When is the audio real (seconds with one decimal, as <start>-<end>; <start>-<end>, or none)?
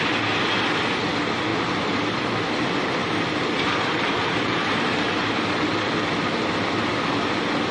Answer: 0.0-1.5; 5.5-7.7